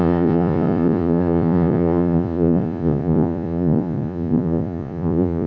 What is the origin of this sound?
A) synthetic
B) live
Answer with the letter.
A